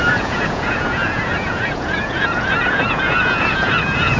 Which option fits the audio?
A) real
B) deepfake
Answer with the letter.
B